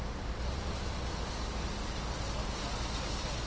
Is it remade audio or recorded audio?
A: recorded